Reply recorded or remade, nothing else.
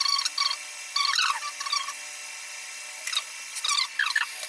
recorded